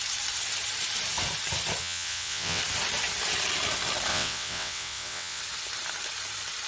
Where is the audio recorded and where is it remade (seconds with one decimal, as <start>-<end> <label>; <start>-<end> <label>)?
0.0-1.8 recorded; 1.8-2.6 remade; 2.6-4.1 recorded; 4.1-5.4 remade; 5.4-6.7 recorded